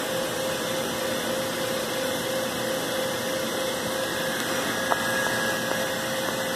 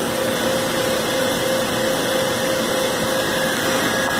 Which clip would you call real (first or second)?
second